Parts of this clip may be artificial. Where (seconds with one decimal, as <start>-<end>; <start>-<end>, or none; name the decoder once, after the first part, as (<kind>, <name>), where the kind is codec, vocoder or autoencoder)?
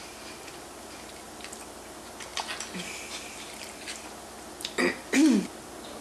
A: none